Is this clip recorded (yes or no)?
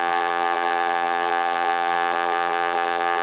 no